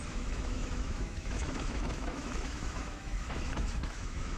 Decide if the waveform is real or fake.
fake